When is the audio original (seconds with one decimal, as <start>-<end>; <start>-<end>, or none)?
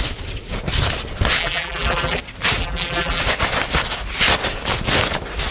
0.0-1.4; 2.2-2.6; 3.2-5.5